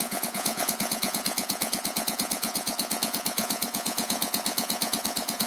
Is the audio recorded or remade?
remade